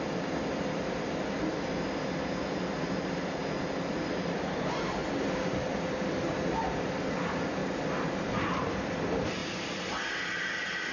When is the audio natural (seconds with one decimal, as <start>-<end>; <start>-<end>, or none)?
3.4-3.9; 7.6-8.2